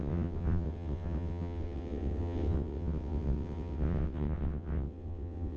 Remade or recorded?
remade